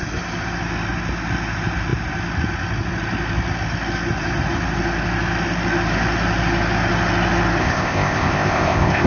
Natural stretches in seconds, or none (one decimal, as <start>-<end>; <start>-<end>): 0.0-7.6